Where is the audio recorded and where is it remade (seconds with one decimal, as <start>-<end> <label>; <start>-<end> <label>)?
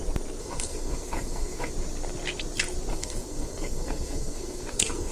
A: 0.0-0.4 recorded; 0.4-1.7 remade; 1.7-2.9 recorded; 2.9-5.1 remade